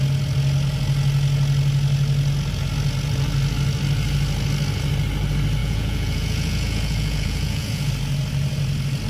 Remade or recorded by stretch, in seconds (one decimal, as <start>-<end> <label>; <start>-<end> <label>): 0.0-5.6 recorded; 5.6-7.9 remade; 7.9-9.1 recorded